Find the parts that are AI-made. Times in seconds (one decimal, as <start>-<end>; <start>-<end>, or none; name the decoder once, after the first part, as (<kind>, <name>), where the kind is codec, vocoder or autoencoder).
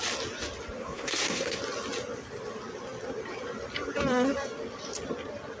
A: 0.8-1.6 (codec, SNAC)